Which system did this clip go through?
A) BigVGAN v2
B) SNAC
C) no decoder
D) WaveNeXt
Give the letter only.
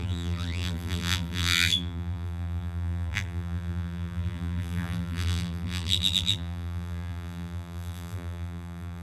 A